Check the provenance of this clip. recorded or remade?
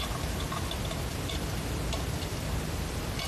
recorded